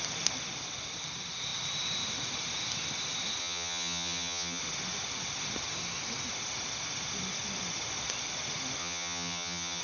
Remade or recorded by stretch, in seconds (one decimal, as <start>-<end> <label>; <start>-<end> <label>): 0.0-3.4 recorded; 3.4-4.6 remade; 4.6-8.8 recorded; 8.8-9.8 remade